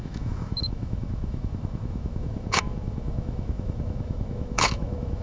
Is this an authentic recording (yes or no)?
no